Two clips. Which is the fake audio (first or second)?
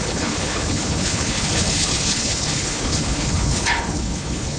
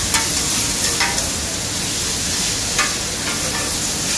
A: first